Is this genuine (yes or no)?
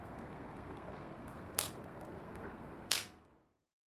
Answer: no